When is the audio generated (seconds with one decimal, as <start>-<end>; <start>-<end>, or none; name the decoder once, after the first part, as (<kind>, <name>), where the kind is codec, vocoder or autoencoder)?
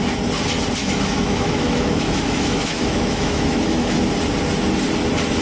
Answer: 0.8-4.0 (autoencoder, DAC-VAE)